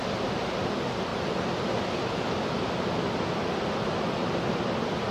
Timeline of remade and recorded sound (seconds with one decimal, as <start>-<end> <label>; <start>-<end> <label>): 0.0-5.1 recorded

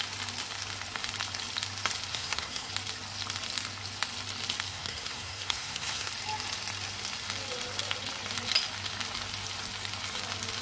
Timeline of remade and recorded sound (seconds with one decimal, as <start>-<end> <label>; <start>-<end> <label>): 0.0-2.1 recorded; 2.1-2.7 remade; 2.7-4.7 recorded; 4.7-6.1 remade; 6.1-10.6 recorded

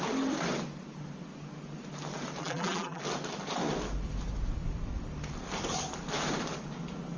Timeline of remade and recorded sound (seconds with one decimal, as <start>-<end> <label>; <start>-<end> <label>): 0.0-2.4 recorded; 2.4-3.0 remade; 3.0-7.2 recorded

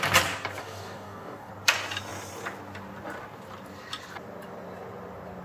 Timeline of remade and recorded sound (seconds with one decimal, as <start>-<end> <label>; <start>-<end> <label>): 0.0-0.6 recorded; 0.6-1.5 remade; 1.5-5.4 recorded

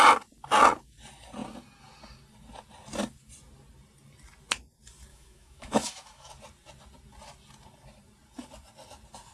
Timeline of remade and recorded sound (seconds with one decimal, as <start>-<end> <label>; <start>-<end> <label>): 0.0-5.1 recorded; 5.1-6.3 remade; 6.3-9.3 recorded

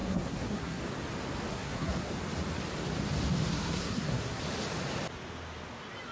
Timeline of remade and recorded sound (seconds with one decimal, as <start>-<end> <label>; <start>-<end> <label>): 0.0-0.8 remade; 0.8-1.5 recorded; 1.5-2.1 remade; 2.1-3.5 recorded; 3.5-4.4 remade; 4.4-6.1 recorded

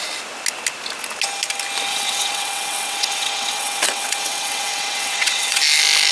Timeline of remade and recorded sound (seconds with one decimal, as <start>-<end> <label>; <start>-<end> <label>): 0.0-1.9 recorded; 1.9-5.6 remade; 5.6-6.1 recorded

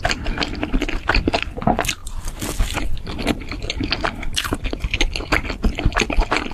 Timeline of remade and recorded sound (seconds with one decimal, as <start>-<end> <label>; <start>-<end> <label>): 0.0-2.0 recorded; 2.0-2.8 remade; 2.8-4.3 recorded; 4.3-5.1 remade; 5.1-6.5 recorded